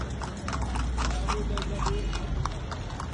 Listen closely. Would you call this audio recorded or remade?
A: recorded